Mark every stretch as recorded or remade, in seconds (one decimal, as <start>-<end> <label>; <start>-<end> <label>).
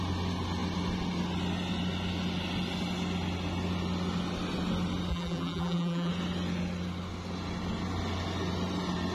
0.0-5.1 recorded; 5.1-6.1 remade; 6.1-9.1 recorded